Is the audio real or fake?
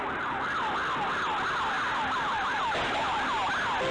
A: real